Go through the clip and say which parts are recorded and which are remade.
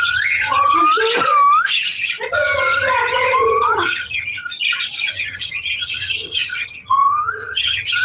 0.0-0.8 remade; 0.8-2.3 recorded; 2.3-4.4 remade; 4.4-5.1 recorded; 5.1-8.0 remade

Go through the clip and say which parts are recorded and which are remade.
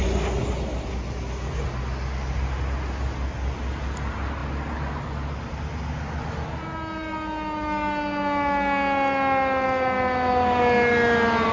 0.0-11.5 recorded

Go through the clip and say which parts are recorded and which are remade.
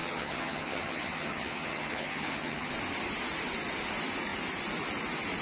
0.0-2.7 remade; 2.7-5.4 recorded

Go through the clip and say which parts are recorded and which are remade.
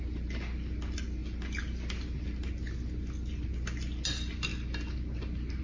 0.0-5.6 recorded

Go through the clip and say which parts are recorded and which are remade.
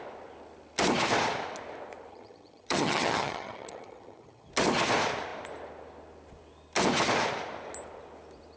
0.0-2.1 recorded; 2.1-4.5 remade; 4.5-8.6 recorded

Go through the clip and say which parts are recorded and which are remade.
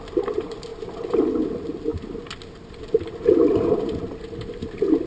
0.0-5.1 recorded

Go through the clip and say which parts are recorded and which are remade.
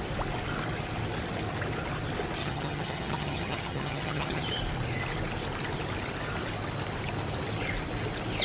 0.0-2.4 recorded; 2.4-4.4 remade; 4.4-8.4 recorded